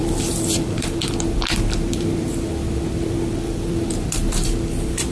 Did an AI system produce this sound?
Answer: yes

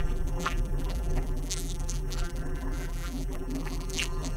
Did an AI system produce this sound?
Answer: yes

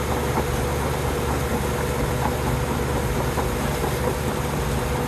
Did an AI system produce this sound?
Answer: no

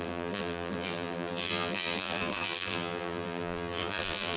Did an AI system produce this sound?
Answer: yes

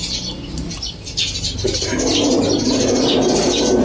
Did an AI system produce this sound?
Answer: no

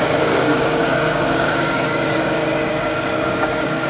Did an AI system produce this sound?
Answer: yes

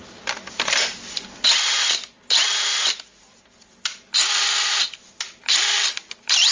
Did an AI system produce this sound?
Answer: yes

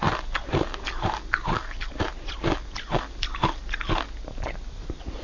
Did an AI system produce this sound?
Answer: no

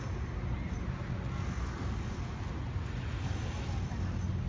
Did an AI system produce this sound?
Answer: no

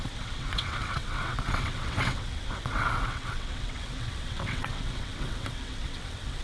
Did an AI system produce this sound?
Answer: yes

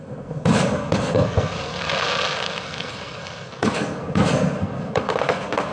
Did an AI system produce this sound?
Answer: yes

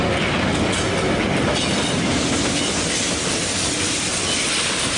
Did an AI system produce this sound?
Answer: no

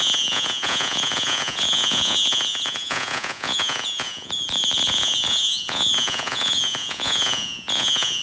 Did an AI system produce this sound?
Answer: yes